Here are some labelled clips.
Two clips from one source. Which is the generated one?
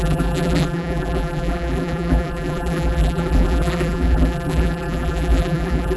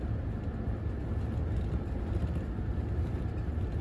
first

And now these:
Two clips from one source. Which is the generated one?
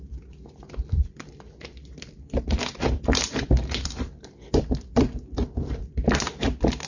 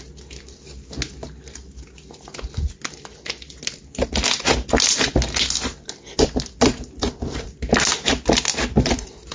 first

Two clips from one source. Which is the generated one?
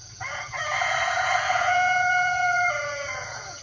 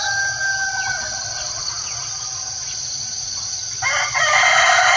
first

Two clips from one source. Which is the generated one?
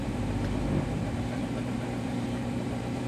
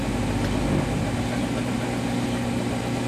first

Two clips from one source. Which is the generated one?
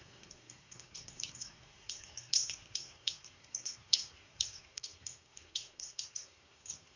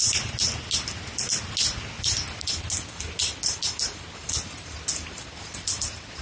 first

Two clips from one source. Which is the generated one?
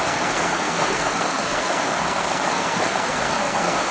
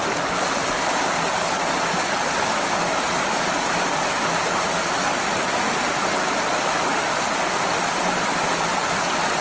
first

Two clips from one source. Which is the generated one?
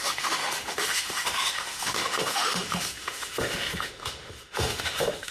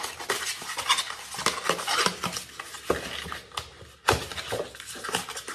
first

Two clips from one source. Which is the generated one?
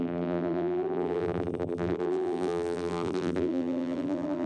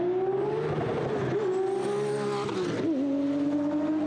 first